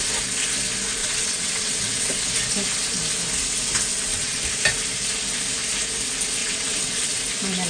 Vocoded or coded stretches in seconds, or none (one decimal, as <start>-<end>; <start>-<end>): 1.0-2.2; 3.9-4.4; 6.4-7.2